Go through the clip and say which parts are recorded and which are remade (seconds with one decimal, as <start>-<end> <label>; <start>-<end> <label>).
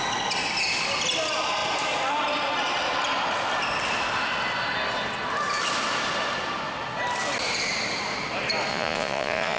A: 0.0-8.7 recorded; 8.7-9.6 remade